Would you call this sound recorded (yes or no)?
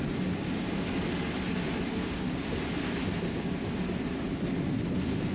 yes